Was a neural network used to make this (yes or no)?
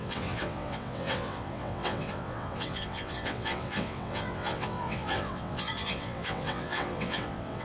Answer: yes